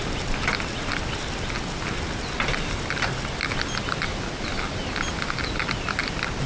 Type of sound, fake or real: real